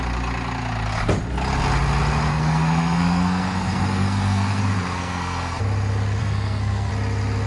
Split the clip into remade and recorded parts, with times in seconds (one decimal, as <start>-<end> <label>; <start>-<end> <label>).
0.0-2.3 recorded; 2.3-4.6 remade; 4.6-5.0 recorded; 5.0-5.6 remade; 5.6-6.2 recorded; 6.2-6.9 remade; 6.9-7.5 recorded